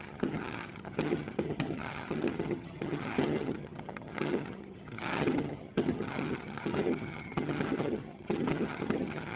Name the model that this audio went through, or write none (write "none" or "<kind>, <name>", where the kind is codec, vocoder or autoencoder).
vocoder, HiFi-GAN